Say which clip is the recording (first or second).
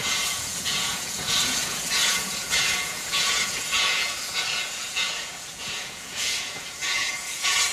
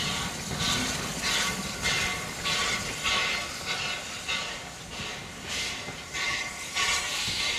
second